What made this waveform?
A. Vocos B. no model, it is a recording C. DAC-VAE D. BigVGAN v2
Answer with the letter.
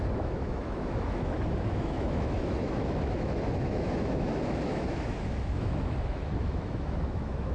C